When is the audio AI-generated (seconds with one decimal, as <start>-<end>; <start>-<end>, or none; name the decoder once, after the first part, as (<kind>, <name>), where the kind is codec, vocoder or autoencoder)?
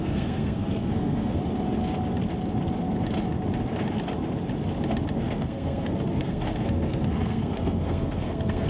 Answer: 0.0-1.4 (codec, SNAC); 5.2-8.7